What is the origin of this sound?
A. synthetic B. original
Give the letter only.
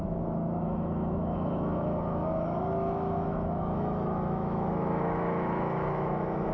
A